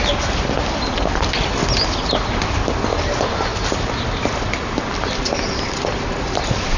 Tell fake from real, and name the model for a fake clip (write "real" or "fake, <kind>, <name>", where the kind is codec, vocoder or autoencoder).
real